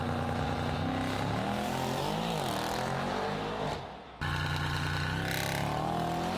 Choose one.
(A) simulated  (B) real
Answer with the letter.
B